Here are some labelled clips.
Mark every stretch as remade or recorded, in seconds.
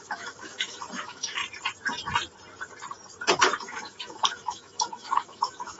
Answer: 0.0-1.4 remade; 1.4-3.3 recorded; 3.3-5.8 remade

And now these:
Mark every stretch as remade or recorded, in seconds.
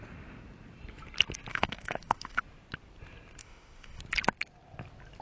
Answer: 0.0-1.5 recorded; 1.5-2.4 remade; 2.4-3.4 recorded; 3.4-4.0 remade; 4.0-5.2 recorded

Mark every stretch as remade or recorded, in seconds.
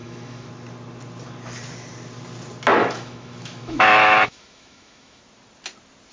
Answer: 0.0-0.5 remade; 0.5-2.8 recorded; 2.8-5.2 remade; 5.2-6.1 recorded